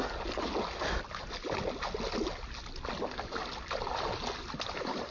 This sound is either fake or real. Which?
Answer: real